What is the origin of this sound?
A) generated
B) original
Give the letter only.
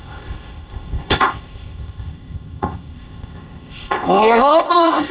A